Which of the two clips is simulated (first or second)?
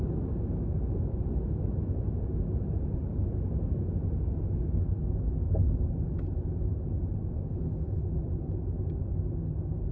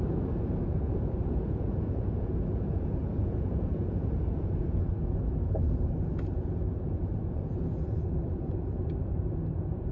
second